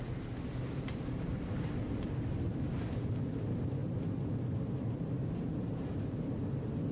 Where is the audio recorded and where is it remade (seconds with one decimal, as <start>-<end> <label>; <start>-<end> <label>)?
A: 0.0-6.9 remade